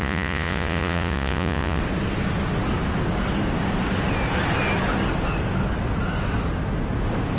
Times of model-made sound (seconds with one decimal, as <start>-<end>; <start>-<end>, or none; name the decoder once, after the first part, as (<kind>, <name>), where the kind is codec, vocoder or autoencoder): 0.0-1.8 (vocoder, Vocos)